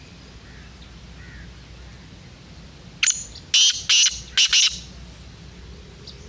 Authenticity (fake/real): real